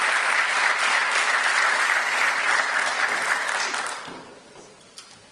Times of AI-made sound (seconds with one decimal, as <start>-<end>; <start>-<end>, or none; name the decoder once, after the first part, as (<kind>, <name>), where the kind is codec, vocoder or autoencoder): none